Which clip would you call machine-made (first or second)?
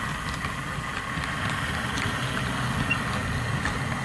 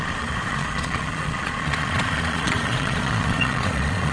second